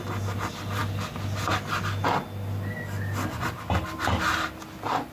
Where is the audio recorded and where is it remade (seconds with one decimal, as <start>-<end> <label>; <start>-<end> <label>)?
0.0-5.1 recorded

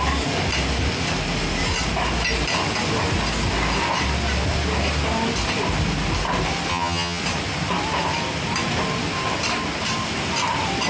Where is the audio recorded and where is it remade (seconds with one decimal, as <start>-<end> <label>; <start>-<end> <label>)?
0.0-6.7 recorded; 6.7-7.2 remade; 7.2-10.9 recorded

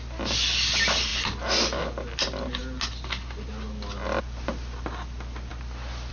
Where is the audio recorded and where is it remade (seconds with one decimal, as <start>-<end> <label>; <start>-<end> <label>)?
0.0-6.1 recorded